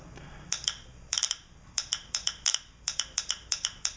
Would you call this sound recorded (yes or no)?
no